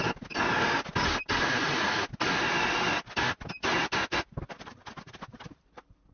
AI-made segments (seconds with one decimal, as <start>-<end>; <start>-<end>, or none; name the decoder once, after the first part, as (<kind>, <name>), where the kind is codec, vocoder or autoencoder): none